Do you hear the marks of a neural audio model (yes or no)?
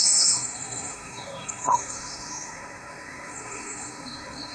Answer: yes